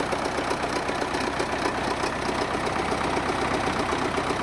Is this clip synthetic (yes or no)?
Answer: no